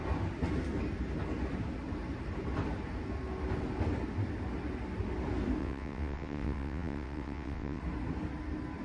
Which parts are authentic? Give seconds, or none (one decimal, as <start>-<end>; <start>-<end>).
0.0-5.6; 7.8-8.8